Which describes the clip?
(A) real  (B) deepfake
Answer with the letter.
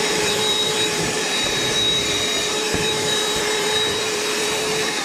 B